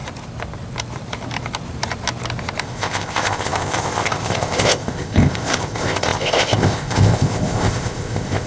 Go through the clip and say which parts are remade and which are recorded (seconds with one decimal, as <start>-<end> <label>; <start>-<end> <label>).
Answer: 0.0-2.6 recorded; 2.6-8.5 remade